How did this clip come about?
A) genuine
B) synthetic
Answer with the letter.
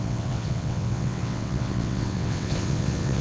B